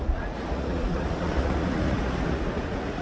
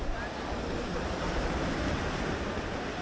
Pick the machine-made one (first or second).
first